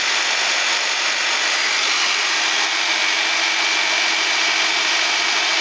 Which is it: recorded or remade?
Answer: recorded